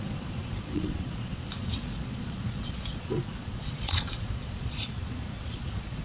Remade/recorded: remade